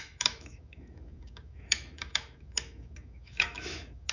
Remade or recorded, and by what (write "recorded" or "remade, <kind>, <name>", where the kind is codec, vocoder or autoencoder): remade, autoencoder, DAC-VAE